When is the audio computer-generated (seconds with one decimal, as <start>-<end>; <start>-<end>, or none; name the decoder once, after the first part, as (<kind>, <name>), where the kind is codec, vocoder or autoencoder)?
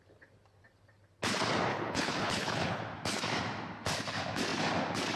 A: 1.7-2.8 (codec, HILCodec)